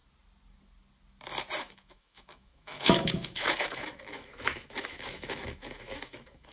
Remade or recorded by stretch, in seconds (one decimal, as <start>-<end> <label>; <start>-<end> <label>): 0.0-1.6 recorded; 1.6-6.5 remade